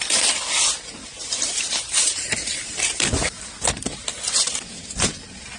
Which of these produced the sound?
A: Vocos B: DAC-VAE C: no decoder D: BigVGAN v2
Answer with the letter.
C